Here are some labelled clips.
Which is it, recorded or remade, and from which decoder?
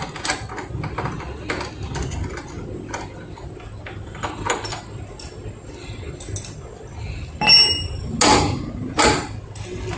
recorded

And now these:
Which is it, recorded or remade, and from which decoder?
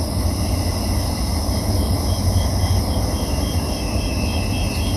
recorded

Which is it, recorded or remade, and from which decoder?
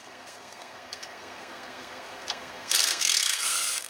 remade, codec, SNAC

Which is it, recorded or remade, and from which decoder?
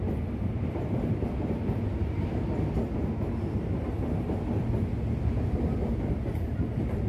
recorded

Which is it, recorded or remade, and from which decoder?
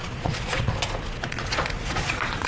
remade, vocoder, Vocos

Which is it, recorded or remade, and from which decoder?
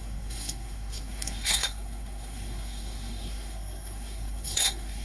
remade, codec, SNAC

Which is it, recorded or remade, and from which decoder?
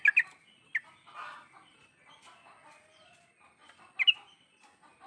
recorded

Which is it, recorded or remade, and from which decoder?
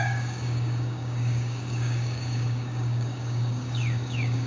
remade, codec, DAC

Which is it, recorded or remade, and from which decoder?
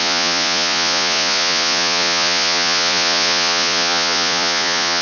remade, vocoder, Vocos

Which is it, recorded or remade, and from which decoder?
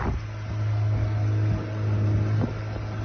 recorded